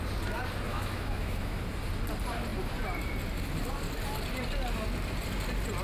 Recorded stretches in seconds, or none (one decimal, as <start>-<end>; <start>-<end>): 0.0-0.7; 1.6-5.8

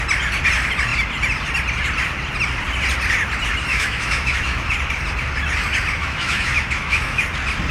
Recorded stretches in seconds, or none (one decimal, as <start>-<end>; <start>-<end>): 0.0-3.7; 4.7-6.0; 7.2-7.7